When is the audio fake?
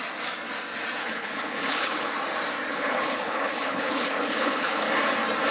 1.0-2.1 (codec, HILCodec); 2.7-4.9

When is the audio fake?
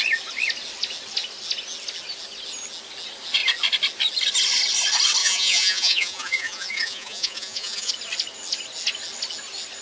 5.2-7.9 (vocoder, Vocos)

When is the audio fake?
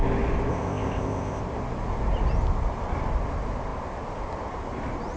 0.5-1.4 (codec, ZipCodec)